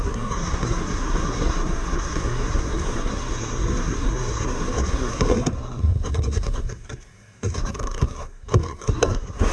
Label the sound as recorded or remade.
remade